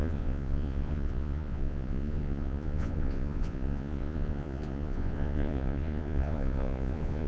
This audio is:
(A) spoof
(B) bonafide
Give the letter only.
A